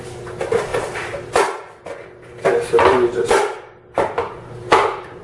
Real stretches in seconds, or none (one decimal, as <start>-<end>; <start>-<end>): 0.0-0.7; 1.8-2.9; 3.6-5.2